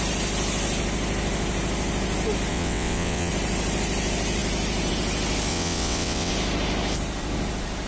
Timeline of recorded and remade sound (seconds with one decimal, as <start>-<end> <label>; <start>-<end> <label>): 0.0-2.5 recorded; 2.5-3.3 remade; 3.3-5.5 recorded; 5.5-6.3 remade; 6.3-7.9 recorded